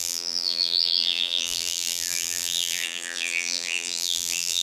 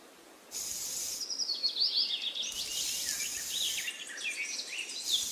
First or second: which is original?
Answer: second